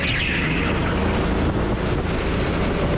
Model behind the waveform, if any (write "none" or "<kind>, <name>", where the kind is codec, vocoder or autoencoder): none